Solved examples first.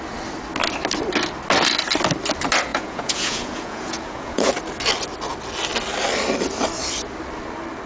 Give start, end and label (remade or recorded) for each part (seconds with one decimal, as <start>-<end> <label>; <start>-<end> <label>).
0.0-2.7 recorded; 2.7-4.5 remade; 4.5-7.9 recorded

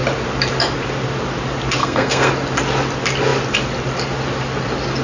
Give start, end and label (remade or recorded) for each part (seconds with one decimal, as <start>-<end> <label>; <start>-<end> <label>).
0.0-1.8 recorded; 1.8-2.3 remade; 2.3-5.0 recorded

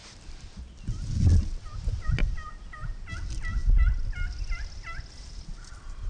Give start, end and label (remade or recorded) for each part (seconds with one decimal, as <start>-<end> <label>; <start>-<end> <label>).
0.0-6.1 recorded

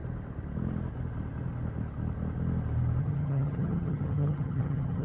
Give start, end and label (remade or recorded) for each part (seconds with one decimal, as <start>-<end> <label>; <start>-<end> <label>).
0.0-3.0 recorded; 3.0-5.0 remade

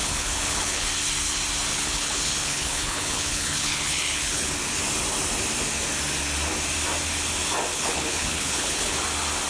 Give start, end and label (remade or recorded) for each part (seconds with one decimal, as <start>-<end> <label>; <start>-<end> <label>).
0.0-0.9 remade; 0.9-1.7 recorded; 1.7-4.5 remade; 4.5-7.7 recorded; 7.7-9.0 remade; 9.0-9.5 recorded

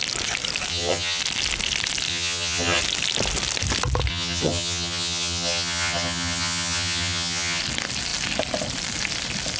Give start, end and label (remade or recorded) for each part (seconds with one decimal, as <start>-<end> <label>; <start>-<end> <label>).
0.0-0.7 recorded; 0.7-1.2 remade; 1.2-2.1 recorded; 2.1-2.8 remade; 2.8-4.1 recorded; 4.1-7.6 remade; 7.6-9.6 recorded

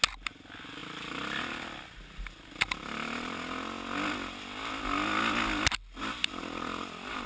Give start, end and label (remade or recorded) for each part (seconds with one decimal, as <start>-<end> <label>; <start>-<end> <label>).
0.0-7.3 recorded

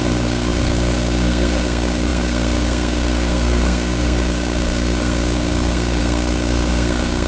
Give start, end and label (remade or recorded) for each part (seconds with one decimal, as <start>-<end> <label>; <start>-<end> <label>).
0.0-7.3 remade